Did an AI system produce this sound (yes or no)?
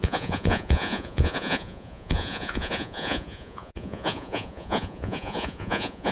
yes